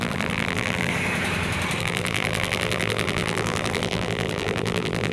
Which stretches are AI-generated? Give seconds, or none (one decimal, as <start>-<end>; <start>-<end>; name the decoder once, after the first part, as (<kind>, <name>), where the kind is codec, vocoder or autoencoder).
0.0-0.9 (vocoder, BigVGAN v2); 1.8-5.1